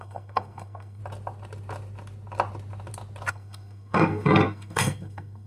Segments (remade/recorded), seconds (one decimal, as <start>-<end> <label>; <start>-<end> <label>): 0.0-1.0 remade; 1.0-3.3 recorded; 3.3-5.5 remade